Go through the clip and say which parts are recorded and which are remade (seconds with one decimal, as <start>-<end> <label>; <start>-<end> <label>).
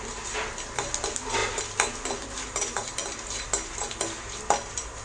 0.0-5.0 recorded